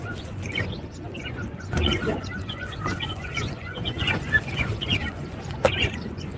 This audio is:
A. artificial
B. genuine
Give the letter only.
A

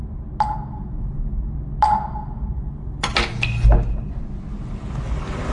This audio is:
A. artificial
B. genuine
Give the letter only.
B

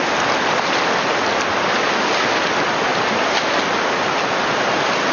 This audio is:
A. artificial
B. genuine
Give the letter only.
B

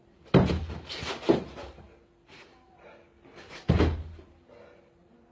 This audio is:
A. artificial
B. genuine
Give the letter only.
B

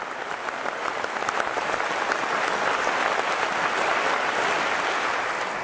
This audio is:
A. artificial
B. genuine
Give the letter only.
B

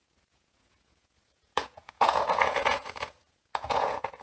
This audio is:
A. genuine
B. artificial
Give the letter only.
B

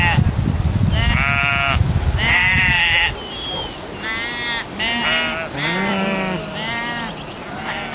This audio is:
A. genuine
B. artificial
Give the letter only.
A